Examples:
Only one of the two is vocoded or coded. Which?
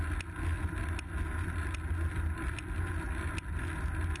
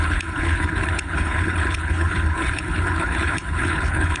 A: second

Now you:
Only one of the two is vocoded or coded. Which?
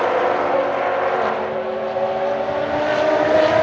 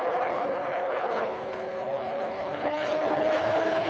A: second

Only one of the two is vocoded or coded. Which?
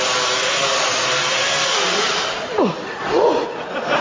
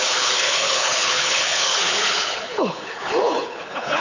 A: second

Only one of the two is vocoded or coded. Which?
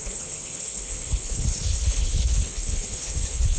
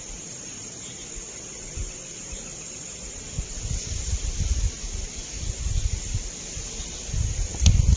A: first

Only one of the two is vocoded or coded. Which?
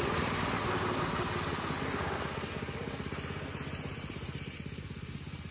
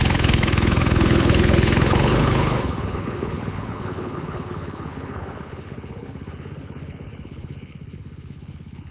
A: second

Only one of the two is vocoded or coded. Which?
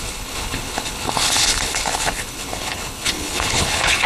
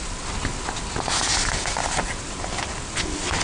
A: first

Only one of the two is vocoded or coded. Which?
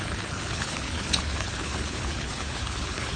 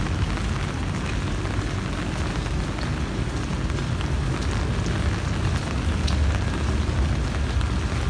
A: first